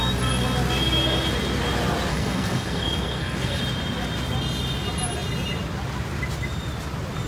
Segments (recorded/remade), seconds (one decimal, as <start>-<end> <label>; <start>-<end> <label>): 0.0-2.1 recorded; 2.1-3.6 remade; 3.6-7.3 recorded